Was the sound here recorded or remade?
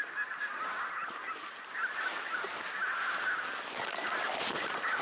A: remade